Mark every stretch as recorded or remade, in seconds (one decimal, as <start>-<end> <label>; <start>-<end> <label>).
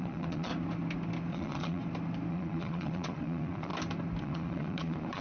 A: 0.0-0.5 remade; 0.5-1.3 recorded; 1.3-1.8 remade; 1.8-2.3 recorded; 2.3-3.7 remade; 3.7-4.2 recorded; 4.2-5.2 remade